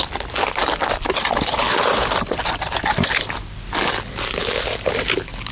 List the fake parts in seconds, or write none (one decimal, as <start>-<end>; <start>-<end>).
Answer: none